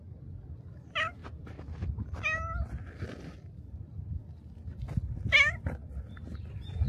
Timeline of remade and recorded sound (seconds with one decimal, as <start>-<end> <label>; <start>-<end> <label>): 0.0-1.2 recorded; 1.2-1.9 remade; 1.9-6.9 recorded